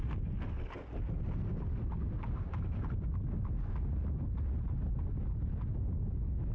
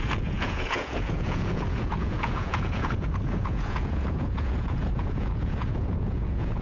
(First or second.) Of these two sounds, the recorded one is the first